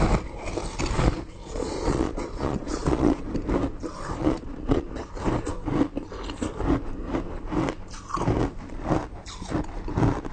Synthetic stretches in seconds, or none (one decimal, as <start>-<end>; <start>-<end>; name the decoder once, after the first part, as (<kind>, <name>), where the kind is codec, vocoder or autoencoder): 1.4-3.2 (vocoder, Vocos); 4.2-5.1